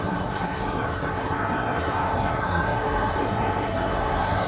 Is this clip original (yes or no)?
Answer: no